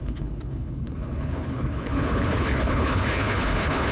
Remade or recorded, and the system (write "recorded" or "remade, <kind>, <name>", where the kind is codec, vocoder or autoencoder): remade, codec, HILCodec